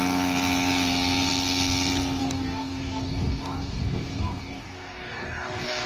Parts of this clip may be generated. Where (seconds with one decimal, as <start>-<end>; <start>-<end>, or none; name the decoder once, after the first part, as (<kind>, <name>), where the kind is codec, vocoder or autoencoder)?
2.2-5.9 (codec, DAC)